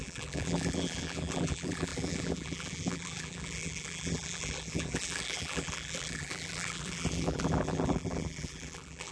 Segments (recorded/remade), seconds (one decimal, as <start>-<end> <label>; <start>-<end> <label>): 0.0-9.1 remade